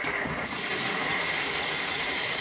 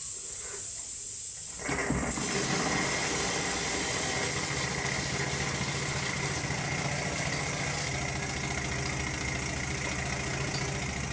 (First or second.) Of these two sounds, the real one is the second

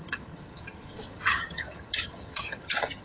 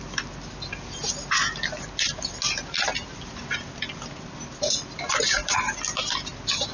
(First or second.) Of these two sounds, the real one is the second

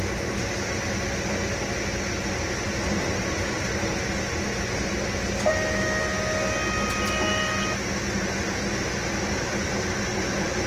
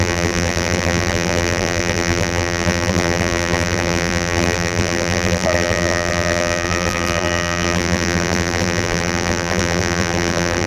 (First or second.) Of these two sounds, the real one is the first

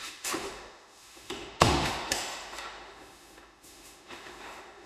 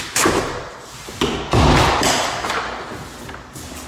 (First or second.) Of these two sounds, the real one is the second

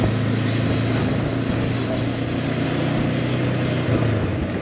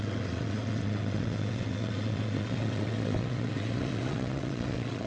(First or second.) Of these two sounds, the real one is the first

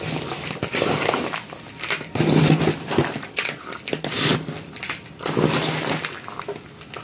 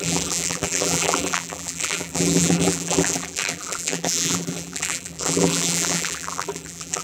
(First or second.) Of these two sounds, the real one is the first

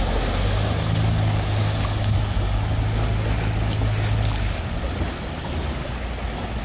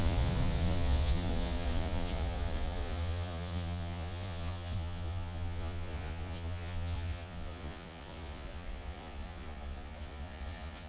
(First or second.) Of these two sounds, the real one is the first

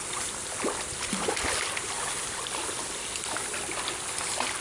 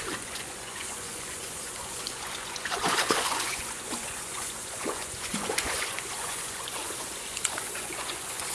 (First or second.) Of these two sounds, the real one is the first